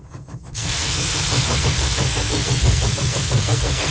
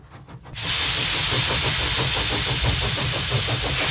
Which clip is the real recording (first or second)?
second